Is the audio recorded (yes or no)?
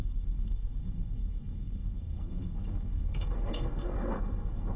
no